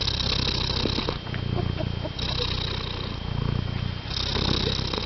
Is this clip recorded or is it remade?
recorded